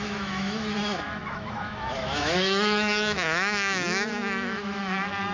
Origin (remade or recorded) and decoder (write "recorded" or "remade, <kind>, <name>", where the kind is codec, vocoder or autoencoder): remade, autoencoder, DAC-VAE